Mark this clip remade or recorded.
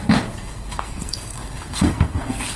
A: remade